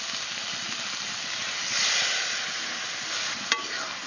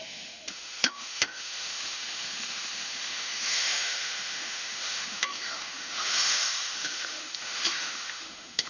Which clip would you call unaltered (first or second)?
first